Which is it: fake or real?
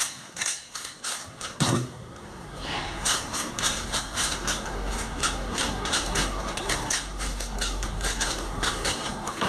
fake